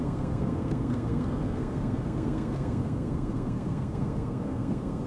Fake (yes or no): yes